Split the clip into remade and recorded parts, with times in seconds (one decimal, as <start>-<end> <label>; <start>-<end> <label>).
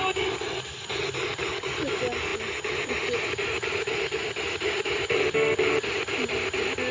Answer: 0.0-6.9 recorded